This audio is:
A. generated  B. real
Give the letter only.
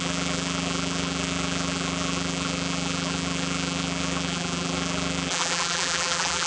A